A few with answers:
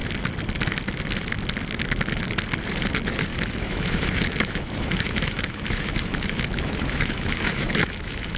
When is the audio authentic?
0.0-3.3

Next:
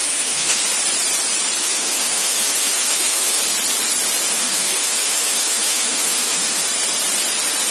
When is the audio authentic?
0.6-1.6; 3.4-4.3; 6.7-7.7

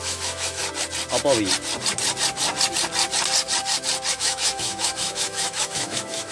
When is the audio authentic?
0.6-4.1

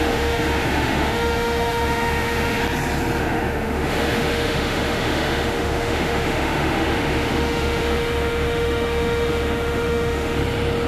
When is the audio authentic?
2.6-3.2; 10.4-10.9